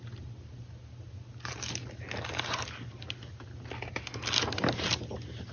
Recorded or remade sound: recorded